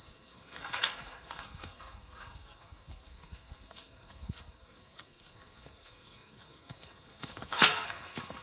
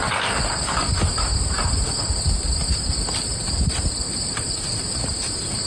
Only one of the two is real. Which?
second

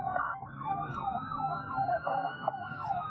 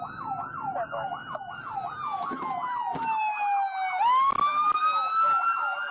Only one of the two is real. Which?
second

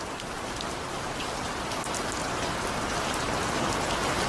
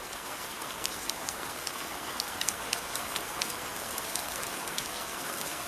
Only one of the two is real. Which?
first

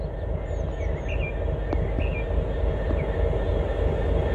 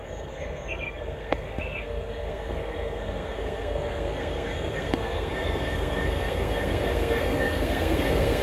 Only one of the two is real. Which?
first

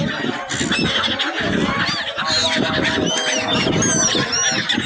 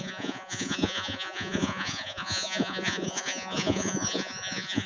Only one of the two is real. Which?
first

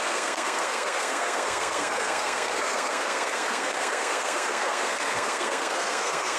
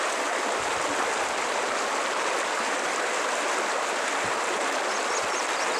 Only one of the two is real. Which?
second